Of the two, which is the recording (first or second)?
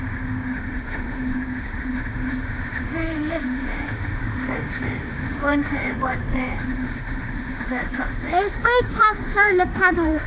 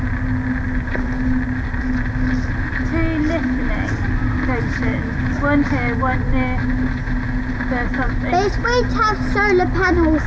second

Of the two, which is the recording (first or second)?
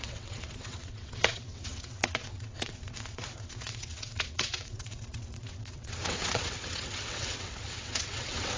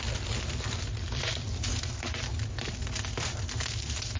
second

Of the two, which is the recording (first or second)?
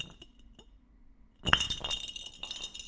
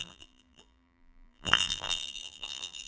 first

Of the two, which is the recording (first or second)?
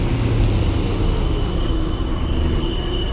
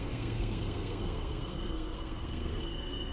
first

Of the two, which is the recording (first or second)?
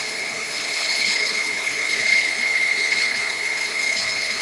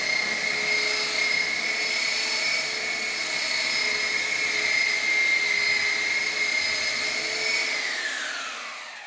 second